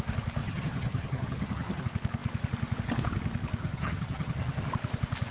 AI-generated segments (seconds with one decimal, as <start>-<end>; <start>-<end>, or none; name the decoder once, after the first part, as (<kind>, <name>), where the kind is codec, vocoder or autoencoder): 0.4-1.8 (vocoder, HiFi-GAN); 3.6-4.7